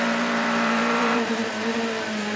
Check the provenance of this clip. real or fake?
fake